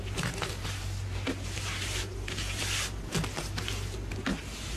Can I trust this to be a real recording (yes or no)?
yes